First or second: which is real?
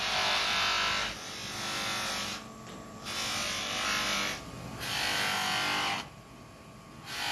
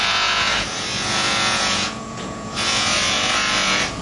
first